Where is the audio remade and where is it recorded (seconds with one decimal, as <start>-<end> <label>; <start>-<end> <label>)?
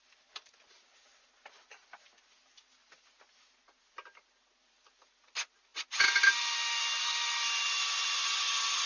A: 0.0-8.9 recorded